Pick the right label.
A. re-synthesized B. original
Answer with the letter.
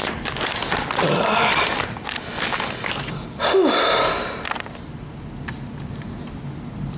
B